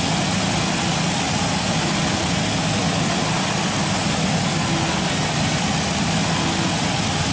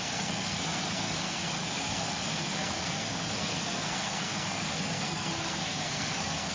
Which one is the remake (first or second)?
second